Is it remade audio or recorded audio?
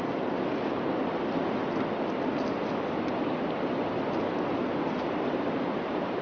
recorded